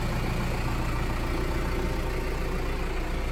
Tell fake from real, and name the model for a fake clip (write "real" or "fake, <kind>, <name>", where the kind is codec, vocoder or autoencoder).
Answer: real